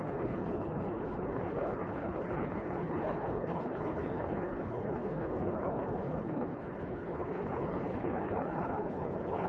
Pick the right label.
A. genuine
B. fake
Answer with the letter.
B